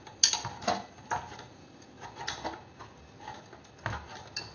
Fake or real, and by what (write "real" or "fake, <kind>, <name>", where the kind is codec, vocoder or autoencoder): real